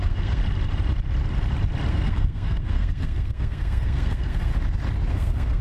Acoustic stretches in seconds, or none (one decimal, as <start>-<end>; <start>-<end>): 0.4-1.9; 4.5-5.1